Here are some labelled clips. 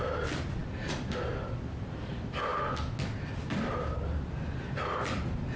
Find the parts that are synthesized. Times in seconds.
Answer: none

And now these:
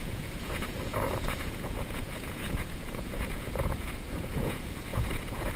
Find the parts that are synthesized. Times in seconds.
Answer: 0.0-5.6 (vocoder, Vocos)

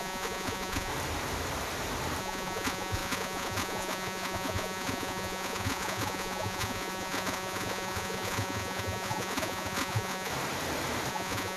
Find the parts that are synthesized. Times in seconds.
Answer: 0.0-0.9 (vocoder, Vocos); 2.2-10.3; 11.1-11.6

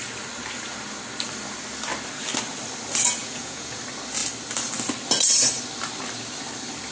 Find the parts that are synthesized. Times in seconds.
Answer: 3.2-3.8 (vocoder, Vocos)